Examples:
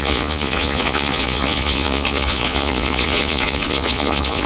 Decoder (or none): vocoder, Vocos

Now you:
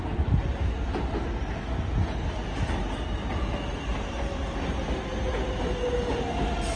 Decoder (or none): none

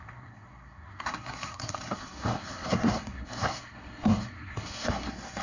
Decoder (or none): codec, SNAC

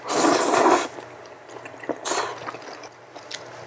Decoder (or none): none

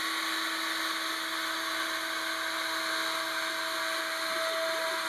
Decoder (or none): none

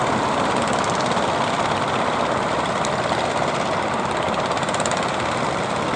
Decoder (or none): none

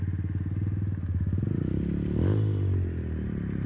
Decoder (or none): none